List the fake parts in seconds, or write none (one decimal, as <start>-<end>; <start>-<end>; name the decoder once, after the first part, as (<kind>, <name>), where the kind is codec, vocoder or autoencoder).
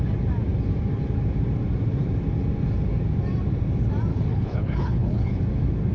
4.1-5.4 (codec, HILCodec)